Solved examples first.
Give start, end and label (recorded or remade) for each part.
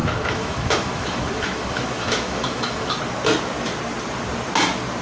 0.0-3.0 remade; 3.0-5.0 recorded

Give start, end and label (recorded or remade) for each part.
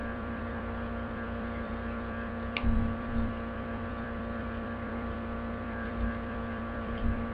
0.0-7.3 remade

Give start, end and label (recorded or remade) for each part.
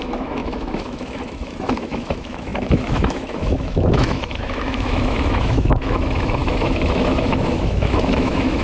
0.0-8.6 remade